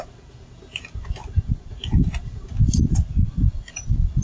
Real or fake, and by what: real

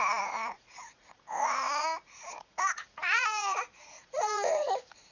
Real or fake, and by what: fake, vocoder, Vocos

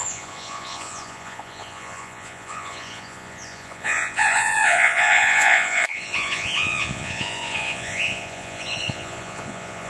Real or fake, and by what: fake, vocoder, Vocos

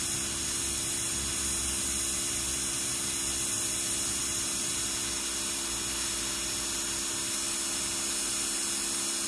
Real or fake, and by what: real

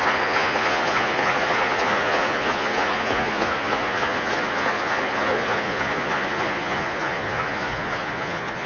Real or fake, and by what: fake, vocoder, Vocos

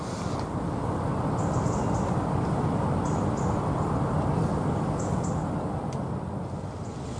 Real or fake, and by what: real